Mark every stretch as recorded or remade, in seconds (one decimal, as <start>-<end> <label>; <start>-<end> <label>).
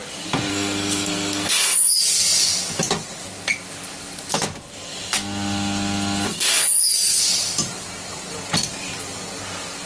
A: 0.0-0.5 recorded; 0.5-2.0 remade; 2.0-6.3 recorded; 6.3-7.2 remade; 7.2-9.8 recorded